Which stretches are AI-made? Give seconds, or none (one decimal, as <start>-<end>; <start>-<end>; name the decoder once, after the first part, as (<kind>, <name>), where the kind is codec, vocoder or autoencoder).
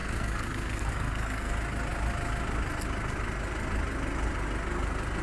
0.0-1.5 (codec, SNAC)